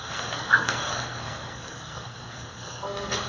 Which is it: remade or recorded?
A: remade